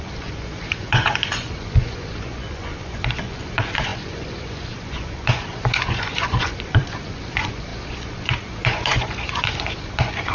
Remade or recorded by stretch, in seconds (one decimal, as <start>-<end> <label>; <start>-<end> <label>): 0.0-10.3 remade